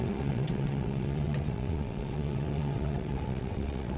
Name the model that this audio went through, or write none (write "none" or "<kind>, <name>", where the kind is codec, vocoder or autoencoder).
vocoder, WaveNeXt